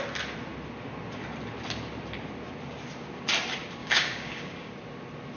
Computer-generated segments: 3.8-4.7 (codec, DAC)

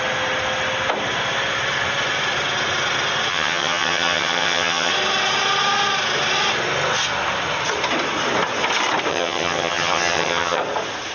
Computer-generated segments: 3.3-4.9 (vocoder, HiFi-GAN); 9.1-10.6

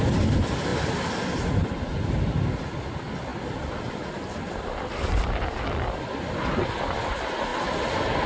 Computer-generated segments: none